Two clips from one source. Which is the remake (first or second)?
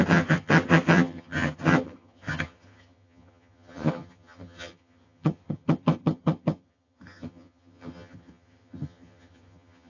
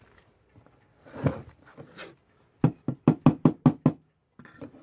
first